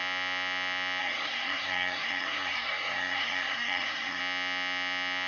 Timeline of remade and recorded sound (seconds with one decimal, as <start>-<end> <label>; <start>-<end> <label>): 0.0-1.0 recorded; 1.0-4.2 remade; 4.2-5.3 recorded